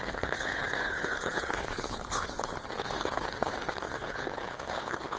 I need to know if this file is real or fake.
fake